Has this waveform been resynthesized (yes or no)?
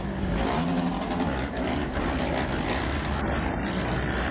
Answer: no